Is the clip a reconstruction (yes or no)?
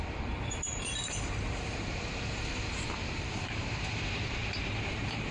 yes